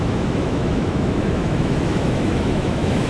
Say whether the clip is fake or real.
fake